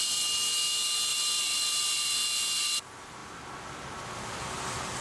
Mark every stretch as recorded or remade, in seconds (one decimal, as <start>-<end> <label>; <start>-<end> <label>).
0.0-1.1 recorded; 1.1-2.7 remade; 2.7-3.2 recorded; 3.2-3.7 remade; 3.7-5.0 recorded

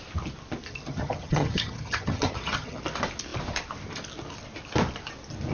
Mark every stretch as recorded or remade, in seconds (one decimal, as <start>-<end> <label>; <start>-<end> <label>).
0.0-0.9 recorded; 0.9-2.8 remade; 2.8-5.5 recorded